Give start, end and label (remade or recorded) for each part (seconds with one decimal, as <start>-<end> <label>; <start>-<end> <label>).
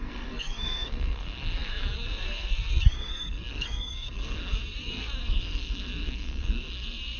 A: 0.0-7.2 remade